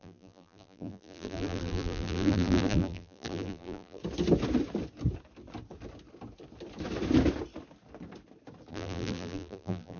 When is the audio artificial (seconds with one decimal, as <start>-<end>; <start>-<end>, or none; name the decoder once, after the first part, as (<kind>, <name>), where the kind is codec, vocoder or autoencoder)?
0.0-4.0 (vocoder, BigVGAN v2); 8.7-10.0